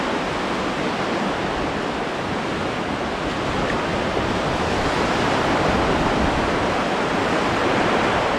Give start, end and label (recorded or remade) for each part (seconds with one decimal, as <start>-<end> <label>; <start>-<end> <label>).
0.0-8.4 recorded